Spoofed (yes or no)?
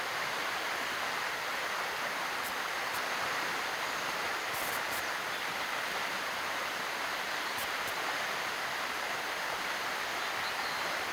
no